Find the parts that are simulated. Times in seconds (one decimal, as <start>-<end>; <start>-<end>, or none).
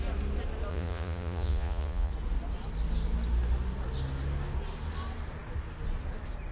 0.7-2.1